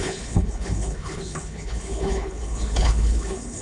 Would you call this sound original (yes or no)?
no